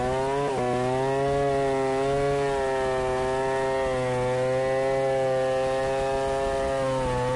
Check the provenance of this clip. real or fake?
real